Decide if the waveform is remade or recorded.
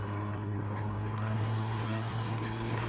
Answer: remade